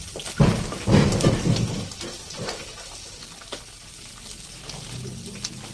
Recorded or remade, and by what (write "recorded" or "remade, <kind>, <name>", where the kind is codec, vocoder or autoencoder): recorded